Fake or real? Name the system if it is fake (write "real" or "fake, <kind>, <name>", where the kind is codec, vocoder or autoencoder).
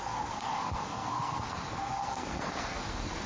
fake, codec, SNAC